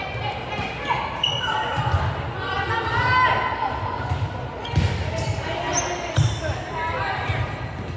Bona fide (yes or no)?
yes